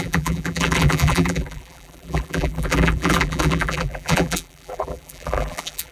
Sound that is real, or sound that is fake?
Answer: fake